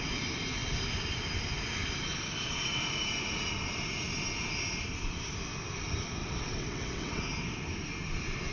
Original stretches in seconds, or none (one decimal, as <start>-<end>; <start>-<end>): 0.0-6.2; 7.2-8.5